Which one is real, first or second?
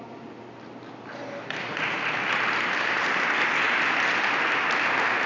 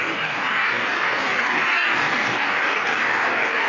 first